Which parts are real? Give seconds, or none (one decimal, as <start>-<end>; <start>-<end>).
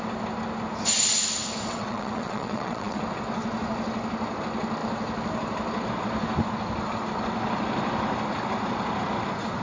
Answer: 0.0-1.7; 3.0-9.6